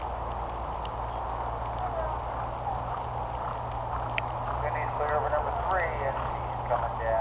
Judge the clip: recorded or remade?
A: recorded